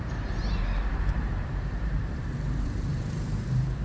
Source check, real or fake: fake